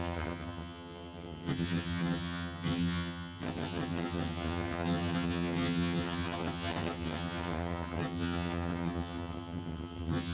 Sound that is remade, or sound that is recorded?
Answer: remade